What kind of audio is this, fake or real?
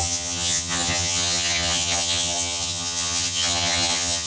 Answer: fake